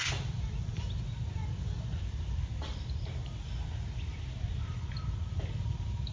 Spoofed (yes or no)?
no